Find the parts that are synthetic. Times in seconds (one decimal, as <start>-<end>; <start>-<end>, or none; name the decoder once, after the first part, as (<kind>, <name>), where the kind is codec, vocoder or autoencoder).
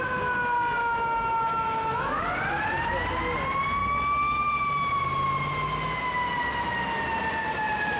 0.8-2.2 (autoencoder, DAC-VAE); 3.8-4.7